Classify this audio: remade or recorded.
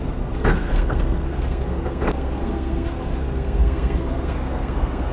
remade